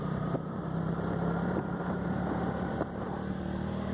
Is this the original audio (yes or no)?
no